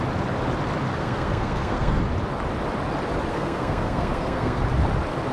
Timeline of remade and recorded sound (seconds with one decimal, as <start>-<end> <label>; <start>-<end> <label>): 0.0-0.9 recorded; 0.9-2.0 remade; 2.0-3.3 recorded; 3.3-4.6 remade; 4.6-5.3 recorded